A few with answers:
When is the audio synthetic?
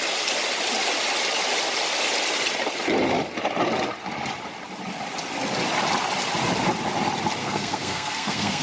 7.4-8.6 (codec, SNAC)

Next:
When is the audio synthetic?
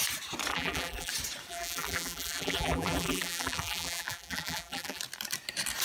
0.5-1.1 (vocoder, BigVGAN v2); 1.5-5.0